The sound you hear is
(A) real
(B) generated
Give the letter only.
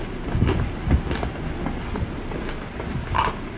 A